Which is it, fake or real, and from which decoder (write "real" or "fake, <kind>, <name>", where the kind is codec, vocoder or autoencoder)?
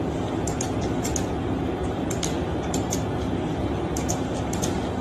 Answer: real